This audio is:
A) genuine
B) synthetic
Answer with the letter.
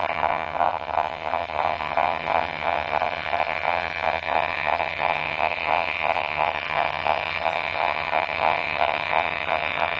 B